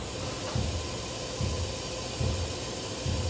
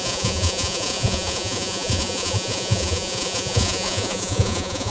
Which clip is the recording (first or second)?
first